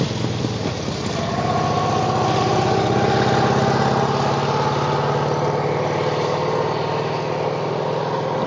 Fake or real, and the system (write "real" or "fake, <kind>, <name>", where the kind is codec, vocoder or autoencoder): real